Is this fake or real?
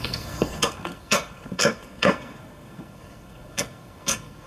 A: fake